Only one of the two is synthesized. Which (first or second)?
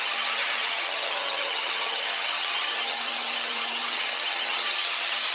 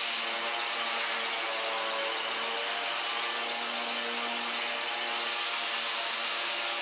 first